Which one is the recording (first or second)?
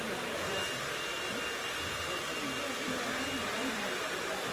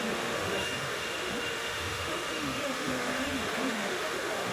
first